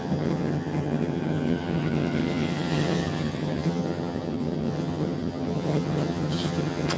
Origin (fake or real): fake